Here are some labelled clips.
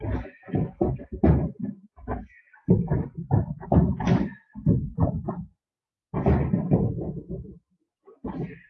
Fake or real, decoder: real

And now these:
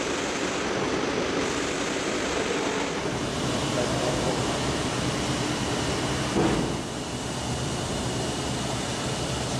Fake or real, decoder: fake, vocoder, BigVGAN v2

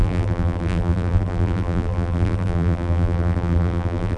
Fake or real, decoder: fake, vocoder, BigVGAN v2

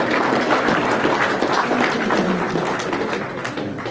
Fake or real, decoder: real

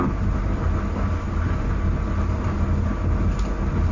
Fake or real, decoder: real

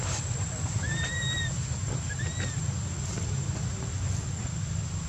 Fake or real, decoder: real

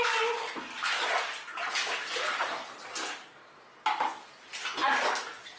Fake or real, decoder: real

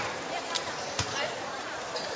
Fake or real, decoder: fake, vocoder, BigVGAN v2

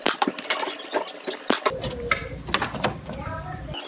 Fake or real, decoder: real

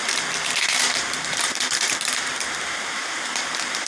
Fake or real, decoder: fake, vocoder, BigVGAN v2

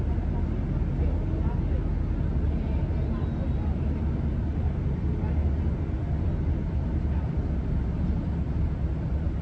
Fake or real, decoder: real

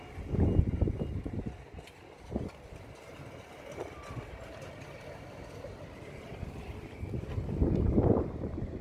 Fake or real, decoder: real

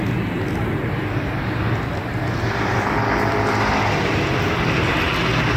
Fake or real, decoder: real